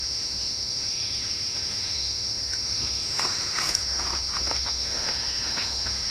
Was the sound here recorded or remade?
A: remade